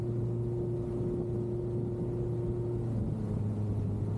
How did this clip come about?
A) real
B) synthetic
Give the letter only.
A